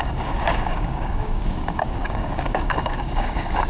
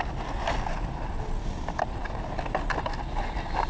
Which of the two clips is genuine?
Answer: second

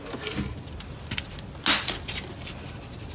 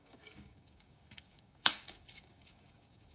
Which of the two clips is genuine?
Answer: first